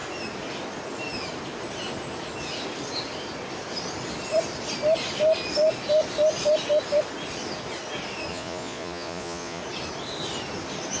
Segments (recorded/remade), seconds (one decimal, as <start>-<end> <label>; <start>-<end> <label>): 0.0-8.3 recorded; 8.3-9.6 remade; 9.6-11.0 recorded